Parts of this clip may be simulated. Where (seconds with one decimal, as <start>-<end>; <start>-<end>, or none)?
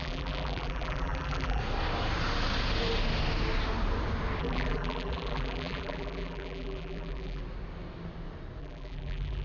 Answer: 0.0-1.6; 4.4-7.4; 8.6-9.4